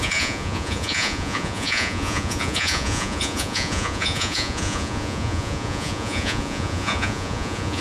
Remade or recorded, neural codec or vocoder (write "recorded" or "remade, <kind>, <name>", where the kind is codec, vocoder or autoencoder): remade, vocoder, Vocos